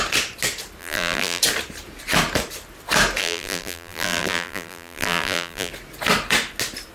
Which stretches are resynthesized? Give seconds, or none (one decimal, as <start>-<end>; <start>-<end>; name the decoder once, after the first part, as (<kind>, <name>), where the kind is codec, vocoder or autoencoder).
0.8-1.4 (vocoder, BigVGAN v2); 3.2-5.7